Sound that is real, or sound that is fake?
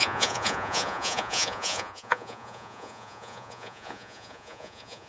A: fake